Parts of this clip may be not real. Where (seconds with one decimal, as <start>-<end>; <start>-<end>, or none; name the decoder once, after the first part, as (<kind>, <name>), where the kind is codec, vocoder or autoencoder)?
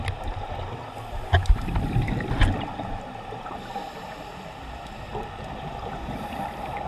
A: 3.7-4.3 (vocoder, BigVGAN v2); 5.1-5.9